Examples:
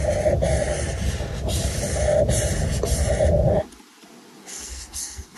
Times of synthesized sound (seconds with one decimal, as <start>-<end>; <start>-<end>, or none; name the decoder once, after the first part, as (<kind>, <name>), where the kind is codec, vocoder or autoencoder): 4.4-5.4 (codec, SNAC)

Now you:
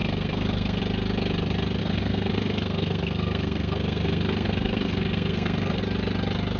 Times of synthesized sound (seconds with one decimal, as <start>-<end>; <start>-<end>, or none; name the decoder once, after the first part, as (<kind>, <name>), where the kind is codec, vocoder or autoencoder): 0.0-0.8 (codec, SNAC); 1.8-5.8

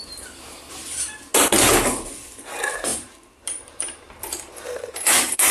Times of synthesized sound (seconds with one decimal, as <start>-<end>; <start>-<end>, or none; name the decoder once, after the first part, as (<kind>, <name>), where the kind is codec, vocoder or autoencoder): 0.0-1.3 (vocoder, BigVGAN v2); 2.3-5.5

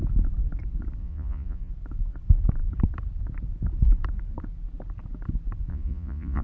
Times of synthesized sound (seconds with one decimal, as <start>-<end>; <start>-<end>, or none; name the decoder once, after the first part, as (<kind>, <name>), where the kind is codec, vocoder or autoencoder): 1.0-1.7 (vocoder, Vocos); 5.7-6.4

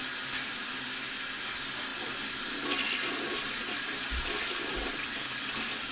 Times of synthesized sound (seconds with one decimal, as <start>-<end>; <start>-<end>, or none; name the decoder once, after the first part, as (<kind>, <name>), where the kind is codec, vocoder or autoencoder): none

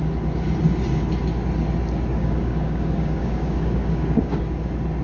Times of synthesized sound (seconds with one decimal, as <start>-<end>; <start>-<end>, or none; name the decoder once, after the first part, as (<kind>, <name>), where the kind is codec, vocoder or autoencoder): 2.1-4.4 (codec, DAC)